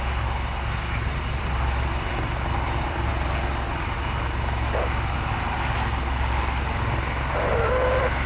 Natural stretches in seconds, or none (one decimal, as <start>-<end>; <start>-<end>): 0.0-0.8; 3.1-8.3